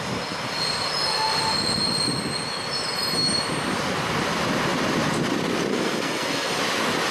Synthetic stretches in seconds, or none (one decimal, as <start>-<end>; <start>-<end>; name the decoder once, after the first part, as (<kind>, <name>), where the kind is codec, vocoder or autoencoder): 5.7-6.6 (codec, SNAC)